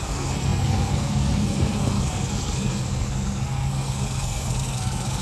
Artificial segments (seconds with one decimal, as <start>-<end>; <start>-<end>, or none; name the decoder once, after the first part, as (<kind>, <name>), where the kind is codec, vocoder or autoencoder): 0.0-5.2 (codec, SNAC)